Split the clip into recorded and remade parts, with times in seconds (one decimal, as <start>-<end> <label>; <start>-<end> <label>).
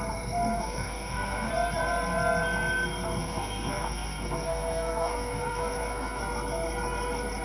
0.0-0.5 recorded; 0.5-1.5 remade; 1.5-3.2 recorded; 3.2-6.2 remade; 6.2-7.4 recorded